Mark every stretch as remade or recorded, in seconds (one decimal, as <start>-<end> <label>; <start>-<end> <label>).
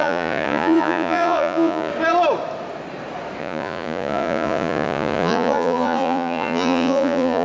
0.0-1.9 remade; 1.9-3.4 recorded; 3.4-7.4 remade